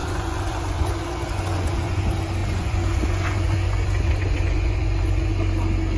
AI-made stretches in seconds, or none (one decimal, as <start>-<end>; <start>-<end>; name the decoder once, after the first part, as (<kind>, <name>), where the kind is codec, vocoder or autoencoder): 0.0-2.0 (vocoder, Vocos); 2.4-5.3